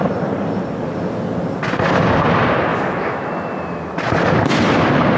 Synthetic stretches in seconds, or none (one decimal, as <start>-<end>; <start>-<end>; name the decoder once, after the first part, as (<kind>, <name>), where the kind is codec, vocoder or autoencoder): 2.7-3.3 (autoencoder, DAC-VAE)